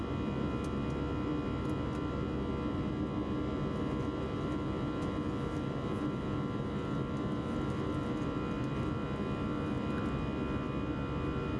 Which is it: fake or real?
real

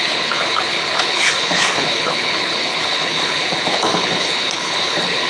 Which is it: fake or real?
fake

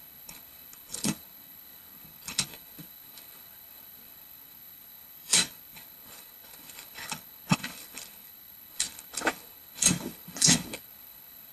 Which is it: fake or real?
fake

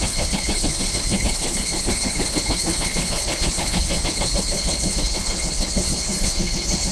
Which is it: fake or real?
fake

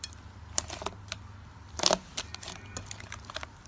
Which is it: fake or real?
real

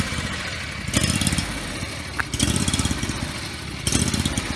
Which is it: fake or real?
real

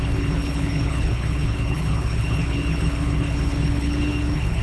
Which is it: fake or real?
fake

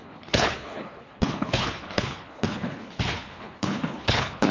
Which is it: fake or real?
fake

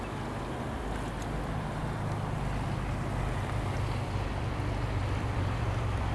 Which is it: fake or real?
real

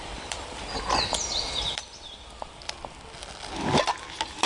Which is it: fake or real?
real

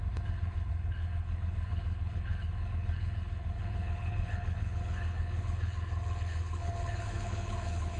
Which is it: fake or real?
fake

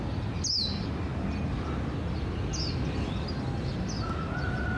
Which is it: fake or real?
real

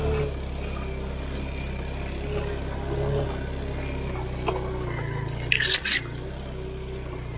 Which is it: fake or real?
real